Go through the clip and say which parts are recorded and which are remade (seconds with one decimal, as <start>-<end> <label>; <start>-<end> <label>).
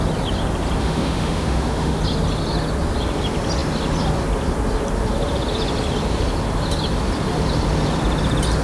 0.0-0.8 recorded; 0.8-2.0 remade; 2.0-8.6 recorded